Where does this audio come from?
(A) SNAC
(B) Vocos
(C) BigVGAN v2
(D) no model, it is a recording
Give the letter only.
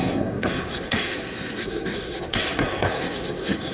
A